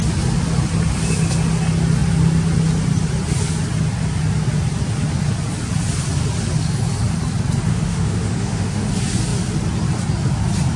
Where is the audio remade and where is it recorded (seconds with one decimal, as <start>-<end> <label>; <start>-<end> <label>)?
0.0-7.7 recorded; 7.7-8.9 remade; 8.9-10.8 recorded